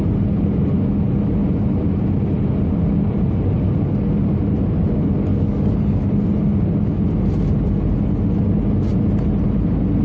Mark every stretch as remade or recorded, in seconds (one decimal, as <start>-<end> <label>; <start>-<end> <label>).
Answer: 0.0-5.3 recorded; 5.3-6.0 remade; 6.0-10.0 recorded